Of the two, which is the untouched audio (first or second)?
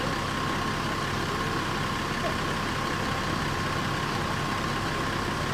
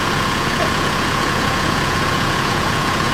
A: first